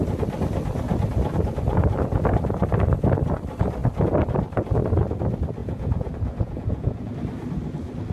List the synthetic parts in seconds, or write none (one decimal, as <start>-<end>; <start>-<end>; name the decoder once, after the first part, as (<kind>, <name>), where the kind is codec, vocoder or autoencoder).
5.6-7.1 (vocoder, Vocos)